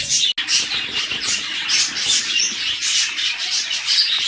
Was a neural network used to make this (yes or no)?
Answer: no